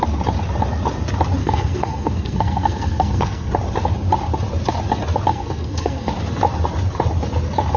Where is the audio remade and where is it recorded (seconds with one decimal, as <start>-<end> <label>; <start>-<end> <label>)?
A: 0.0-1.4 recorded; 1.4-3.5 remade; 3.5-5.3 recorded; 5.3-6.1 remade; 6.1-7.8 recorded